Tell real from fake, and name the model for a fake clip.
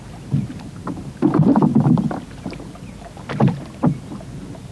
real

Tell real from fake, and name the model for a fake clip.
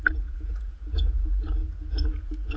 fake, vocoder, Vocos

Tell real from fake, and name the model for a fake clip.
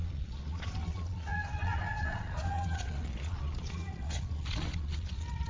fake, vocoder, Vocos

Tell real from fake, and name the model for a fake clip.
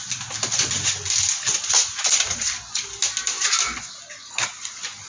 real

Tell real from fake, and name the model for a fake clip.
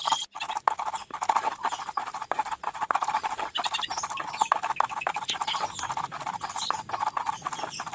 real